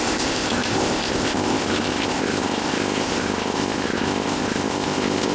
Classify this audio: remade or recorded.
remade